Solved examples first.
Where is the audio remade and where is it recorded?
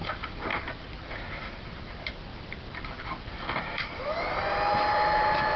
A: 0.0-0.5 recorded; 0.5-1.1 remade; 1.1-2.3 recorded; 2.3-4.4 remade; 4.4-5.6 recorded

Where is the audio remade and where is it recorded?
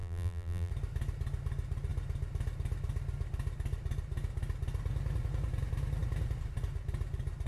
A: 0.0-0.7 remade; 0.7-7.5 recorded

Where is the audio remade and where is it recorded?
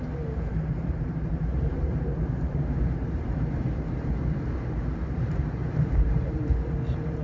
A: 0.0-7.2 remade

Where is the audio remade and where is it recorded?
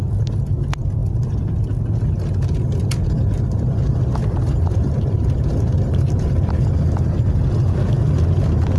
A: 0.0-4.2 recorded; 4.2-6.5 remade; 6.5-8.8 recorded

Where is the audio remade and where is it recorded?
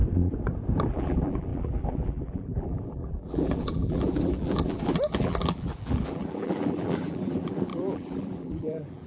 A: 0.0-0.9 recorded; 0.9-9.1 remade